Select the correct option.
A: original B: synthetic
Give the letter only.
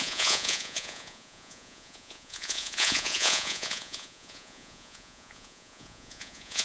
B